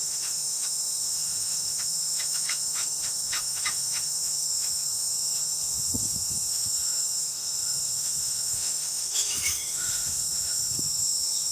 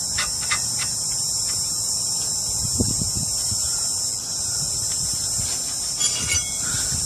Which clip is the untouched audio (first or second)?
second